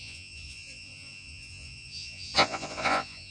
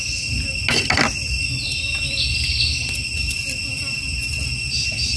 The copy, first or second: first